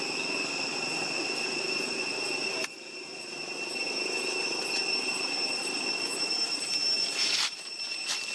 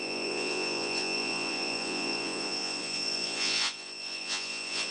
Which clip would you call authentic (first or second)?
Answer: first